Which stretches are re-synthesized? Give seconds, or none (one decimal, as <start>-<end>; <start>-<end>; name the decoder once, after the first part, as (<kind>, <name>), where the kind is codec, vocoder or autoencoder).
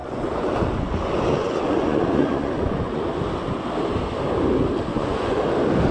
0.0-3.0 (vocoder, Vocos); 4.9-5.4